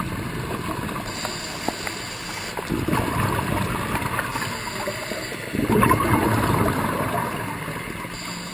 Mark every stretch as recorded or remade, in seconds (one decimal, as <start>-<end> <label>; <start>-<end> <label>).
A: 0.0-8.5 recorded